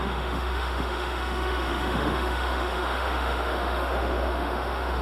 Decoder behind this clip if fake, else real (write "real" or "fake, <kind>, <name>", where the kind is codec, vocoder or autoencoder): fake, autoencoder, DAC-VAE